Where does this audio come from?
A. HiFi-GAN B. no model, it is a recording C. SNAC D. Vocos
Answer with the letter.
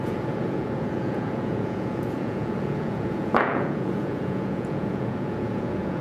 D